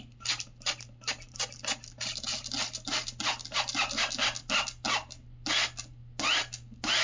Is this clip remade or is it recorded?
recorded